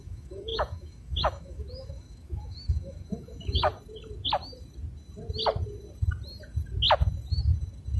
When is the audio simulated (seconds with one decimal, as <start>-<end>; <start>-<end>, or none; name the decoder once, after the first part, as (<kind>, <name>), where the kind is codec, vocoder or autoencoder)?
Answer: 0.0-3.7 (autoencoder, DAC-VAE)